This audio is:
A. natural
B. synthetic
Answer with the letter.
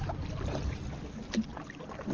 A